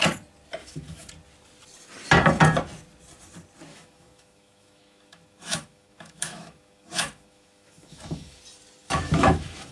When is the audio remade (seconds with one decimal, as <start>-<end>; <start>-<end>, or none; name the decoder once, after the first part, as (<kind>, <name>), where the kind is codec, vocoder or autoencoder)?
0.6-1.1 (autoencoder, DAC-VAE); 3.7-8.4; 8.8-9.7